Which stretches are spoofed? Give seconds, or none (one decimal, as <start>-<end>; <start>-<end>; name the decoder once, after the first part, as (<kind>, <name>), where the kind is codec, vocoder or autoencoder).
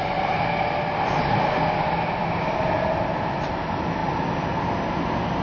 none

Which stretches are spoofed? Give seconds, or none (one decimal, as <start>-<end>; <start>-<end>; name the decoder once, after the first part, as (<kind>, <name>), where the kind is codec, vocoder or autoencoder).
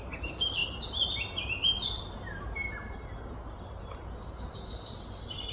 none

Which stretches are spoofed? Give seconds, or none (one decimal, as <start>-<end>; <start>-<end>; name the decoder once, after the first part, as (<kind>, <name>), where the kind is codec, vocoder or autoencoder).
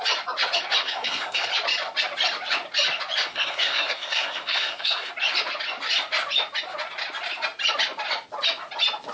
0.8-1.5 (codec, SNAC); 3.3-5.1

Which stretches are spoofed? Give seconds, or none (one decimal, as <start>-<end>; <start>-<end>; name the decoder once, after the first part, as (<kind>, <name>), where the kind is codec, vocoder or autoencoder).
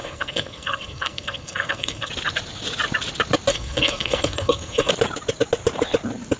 0.0-2.1 (codec, SNAC); 3.5-4.9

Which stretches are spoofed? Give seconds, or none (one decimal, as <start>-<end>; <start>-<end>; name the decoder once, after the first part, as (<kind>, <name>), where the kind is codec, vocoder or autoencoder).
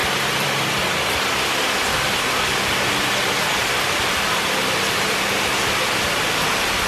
none